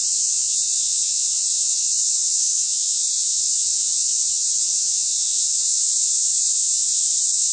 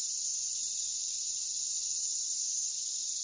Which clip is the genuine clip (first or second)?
second